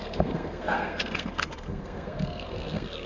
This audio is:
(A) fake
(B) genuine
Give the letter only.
A